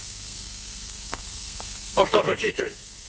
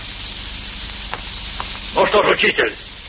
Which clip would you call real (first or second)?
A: second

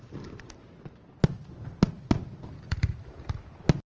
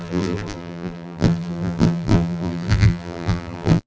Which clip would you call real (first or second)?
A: first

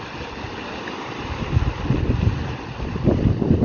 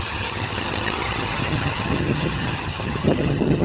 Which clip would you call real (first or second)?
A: first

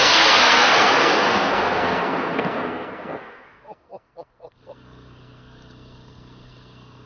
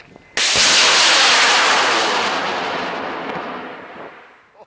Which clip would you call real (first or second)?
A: second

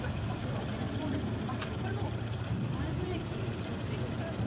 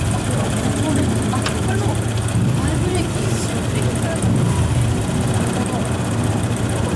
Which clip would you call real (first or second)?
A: second